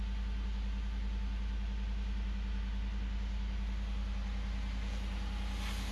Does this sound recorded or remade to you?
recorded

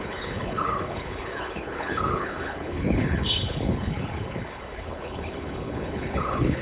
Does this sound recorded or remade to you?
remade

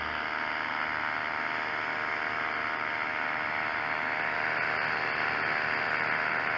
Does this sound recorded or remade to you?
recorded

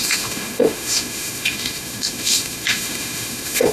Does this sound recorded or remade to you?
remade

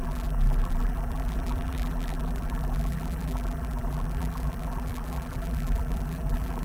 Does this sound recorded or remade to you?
remade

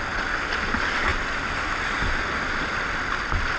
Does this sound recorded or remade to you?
recorded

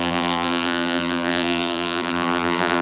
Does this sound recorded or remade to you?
remade